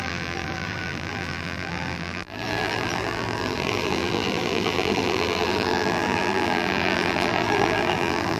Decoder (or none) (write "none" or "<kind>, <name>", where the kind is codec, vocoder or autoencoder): vocoder, BigVGAN v2